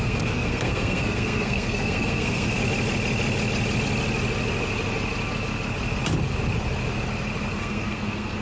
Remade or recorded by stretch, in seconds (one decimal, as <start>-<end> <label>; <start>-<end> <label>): 0.0-2.6 remade; 2.6-7.6 recorded; 7.6-8.4 remade